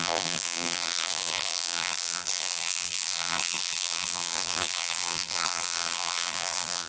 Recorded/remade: remade